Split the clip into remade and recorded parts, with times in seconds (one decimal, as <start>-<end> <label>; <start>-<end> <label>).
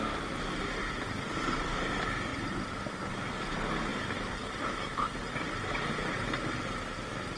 0.0-2.3 recorded; 2.3-3.5 remade; 3.5-7.4 recorded